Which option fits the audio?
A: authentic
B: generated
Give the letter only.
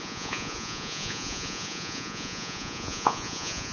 B